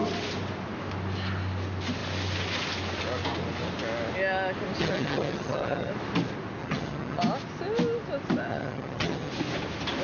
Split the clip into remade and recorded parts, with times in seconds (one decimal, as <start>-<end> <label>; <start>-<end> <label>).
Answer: 0.0-4.8 recorded; 4.8-5.9 remade; 5.9-6.6 recorded; 6.6-7.2 remade; 7.2-8.5 recorded; 8.5-9.3 remade; 9.3-10.0 recorded

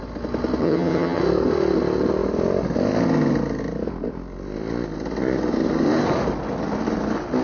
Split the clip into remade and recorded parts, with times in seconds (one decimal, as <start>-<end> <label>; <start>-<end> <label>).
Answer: 0.0-0.6 recorded; 0.6-1.2 remade; 1.2-7.4 recorded

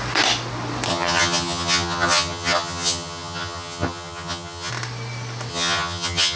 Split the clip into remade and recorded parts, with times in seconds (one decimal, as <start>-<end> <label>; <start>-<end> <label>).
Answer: 0.0-0.9 recorded; 0.9-4.7 remade; 4.7-5.5 recorded; 5.5-6.4 remade

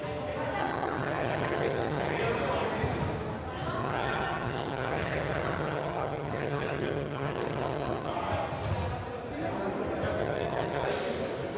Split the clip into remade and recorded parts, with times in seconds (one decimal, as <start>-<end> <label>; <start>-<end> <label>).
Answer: 0.0-0.6 recorded; 0.6-2.2 remade; 2.2-3.8 recorded; 3.8-8.1 remade; 8.1-10.2 recorded; 10.2-10.9 remade; 10.9-11.6 recorded

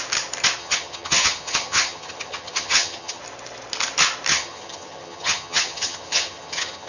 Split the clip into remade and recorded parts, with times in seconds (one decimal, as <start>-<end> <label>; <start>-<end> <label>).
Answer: 0.0-0.6 recorded; 0.6-3.2 remade; 3.2-4.3 recorded; 4.3-6.9 remade